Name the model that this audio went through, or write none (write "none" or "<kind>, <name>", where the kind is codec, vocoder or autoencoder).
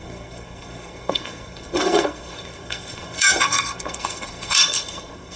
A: codec, SNAC